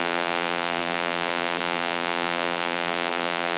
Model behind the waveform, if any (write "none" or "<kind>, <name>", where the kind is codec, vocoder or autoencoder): vocoder, BigVGAN v2